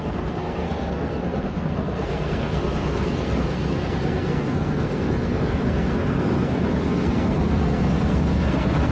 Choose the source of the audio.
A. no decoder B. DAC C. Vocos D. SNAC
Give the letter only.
D